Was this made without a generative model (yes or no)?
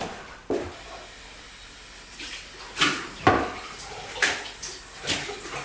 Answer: yes